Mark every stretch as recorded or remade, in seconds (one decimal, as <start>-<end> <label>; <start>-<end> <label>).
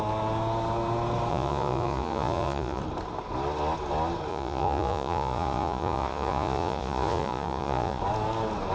0.0-1.3 recorded; 1.3-2.8 remade; 2.8-4.3 recorded; 4.3-8.0 remade; 8.0-8.7 recorded